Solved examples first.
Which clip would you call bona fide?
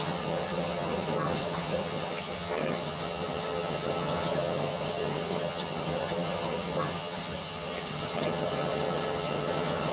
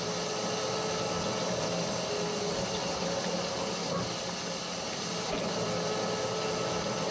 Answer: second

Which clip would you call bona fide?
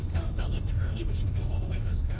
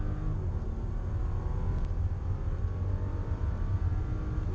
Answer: second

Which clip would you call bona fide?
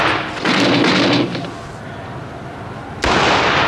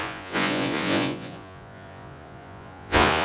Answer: first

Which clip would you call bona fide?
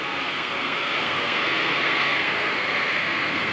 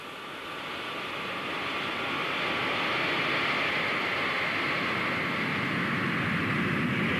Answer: second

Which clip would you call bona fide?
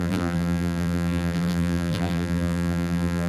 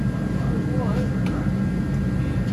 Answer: second